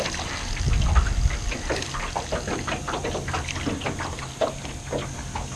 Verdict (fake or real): real